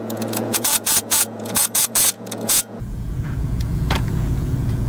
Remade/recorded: remade